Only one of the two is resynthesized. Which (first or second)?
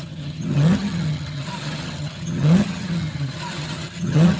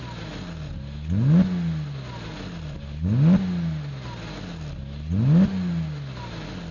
first